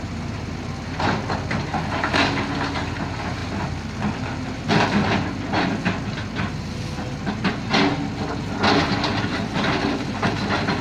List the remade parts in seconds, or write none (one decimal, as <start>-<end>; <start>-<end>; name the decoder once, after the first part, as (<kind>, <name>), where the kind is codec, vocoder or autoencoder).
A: 9.1-9.9 (vocoder, BigVGAN v2)